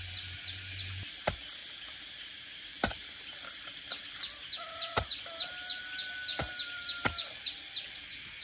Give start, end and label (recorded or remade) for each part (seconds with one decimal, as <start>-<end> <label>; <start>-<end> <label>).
0.0-1.6 recorded; 1.6-2.3 remade; 2.3-2.7 recorded; 2.7-5.8 remade; 5.8-6.3 recorded; 6.3-7.4 remade; 7.4-8.4 recorded